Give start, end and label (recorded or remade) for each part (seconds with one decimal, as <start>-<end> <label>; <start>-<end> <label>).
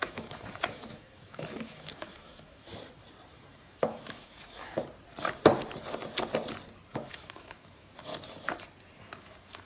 0.0-2.7 remade; 2.7-3.3 recorded; 3.3-4.8 remade; 4.8-6.9 recorded; 6.9-8.1 remade; 8.1-9.0 recorded; 9.0-9.7 remade